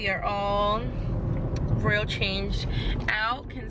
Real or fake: real